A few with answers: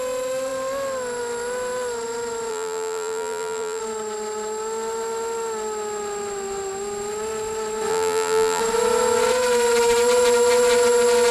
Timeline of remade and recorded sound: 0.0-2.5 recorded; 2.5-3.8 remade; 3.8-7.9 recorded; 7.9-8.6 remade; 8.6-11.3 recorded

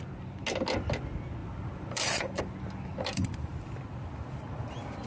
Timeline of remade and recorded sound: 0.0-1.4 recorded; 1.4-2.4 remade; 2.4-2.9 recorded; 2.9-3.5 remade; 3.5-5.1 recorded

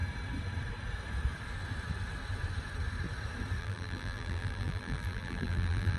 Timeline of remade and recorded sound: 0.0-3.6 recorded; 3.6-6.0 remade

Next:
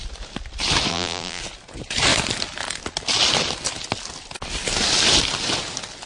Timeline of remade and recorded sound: 0.0-0.9 recorded; 0.9-1.4 remade; 1.4-6.1 recorded

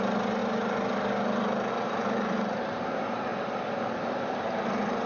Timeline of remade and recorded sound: 0.0-0.4 remade; 0.4-1.7 recorded; 1.7-3.3 remade; 3.3-3.9 recorded; 3.9-5.1 remade

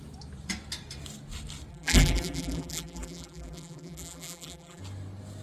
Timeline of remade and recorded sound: 0.0-1.7 recorded; 1.7-4.8 remade; 4.8-5.4 recorded